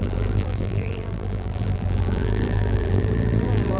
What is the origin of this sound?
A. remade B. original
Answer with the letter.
A